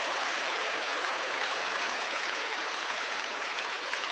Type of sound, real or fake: fake